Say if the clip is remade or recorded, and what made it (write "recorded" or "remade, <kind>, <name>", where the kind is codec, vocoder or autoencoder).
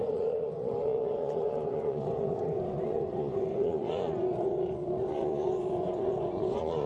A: remade, vocoder, Vocos